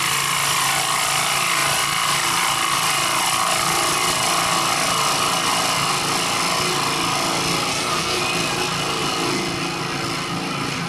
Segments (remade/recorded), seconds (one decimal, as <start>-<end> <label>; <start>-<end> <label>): 0.0-7.7 recorded; 7.7-8.2 remade; 8.2-10.9 recorded